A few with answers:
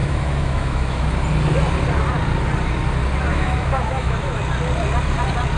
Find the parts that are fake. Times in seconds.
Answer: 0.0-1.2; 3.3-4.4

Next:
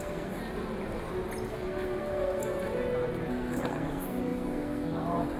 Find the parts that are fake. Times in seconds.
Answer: 0.0-0.4; 1.5-2.5; 3.3-5.4

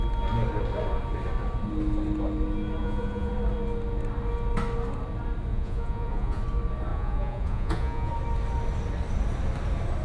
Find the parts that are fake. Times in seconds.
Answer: 2.8-3.3; 5.5-6.4; 6.9-8.1

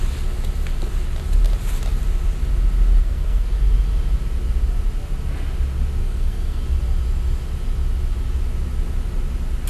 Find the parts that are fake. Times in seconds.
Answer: 3.0-3.6; 6.0-6.6

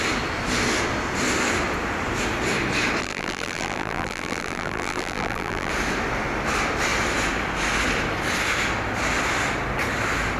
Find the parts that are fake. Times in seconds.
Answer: 3.0-5.7

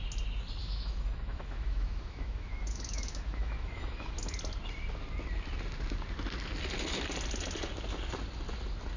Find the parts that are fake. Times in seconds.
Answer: 0.6-4.1

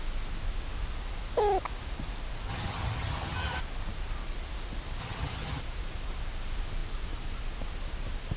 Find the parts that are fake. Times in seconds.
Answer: 2.5-3.6; 5.0-5.6

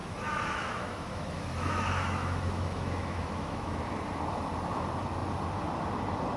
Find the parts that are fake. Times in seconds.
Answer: 0.0-3.8